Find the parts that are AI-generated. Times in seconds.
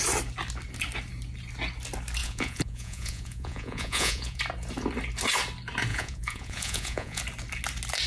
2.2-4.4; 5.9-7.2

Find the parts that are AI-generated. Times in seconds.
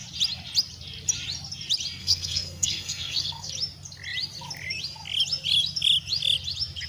2.0-3.5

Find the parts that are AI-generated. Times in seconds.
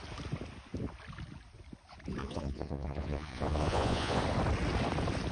2.2-4.2